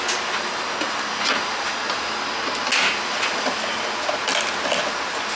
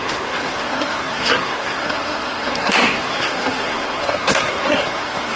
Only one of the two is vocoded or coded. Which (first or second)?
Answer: second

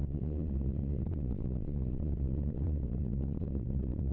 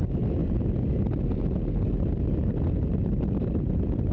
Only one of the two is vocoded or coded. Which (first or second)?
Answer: first